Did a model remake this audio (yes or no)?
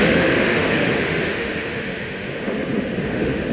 yes